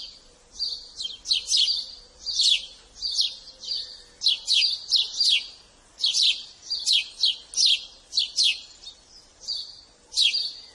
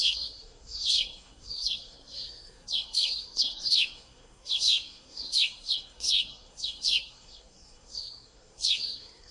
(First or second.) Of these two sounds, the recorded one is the first